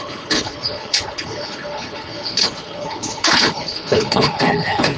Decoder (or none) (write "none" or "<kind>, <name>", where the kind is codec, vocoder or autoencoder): codec, HILCodec